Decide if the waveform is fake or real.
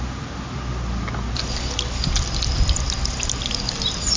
real